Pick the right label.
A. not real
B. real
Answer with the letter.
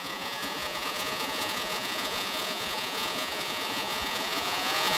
A